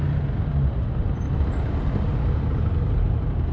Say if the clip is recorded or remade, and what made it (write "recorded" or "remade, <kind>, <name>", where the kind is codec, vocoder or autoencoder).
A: recorded